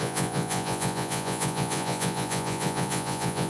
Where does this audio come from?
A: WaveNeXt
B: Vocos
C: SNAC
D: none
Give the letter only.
B